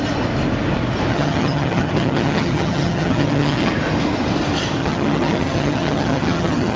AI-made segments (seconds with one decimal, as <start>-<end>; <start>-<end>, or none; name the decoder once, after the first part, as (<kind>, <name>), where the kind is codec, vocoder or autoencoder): 1.1-3.7 (vocoder, HiFi-GAN); 4.8-6.8